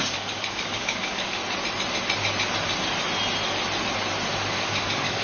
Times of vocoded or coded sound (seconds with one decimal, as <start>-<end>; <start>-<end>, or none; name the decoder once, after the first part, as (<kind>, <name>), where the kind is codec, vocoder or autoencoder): 0.0-1.4 (codec, DAC); 4.5-5.2